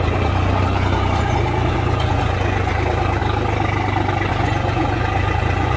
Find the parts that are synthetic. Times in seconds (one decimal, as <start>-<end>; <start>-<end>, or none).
0.0-3.2; 4.3-5.8